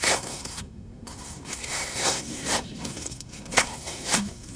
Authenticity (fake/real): fake